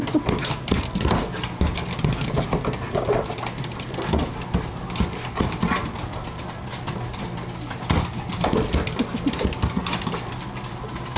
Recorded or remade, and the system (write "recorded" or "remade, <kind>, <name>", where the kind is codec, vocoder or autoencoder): recorded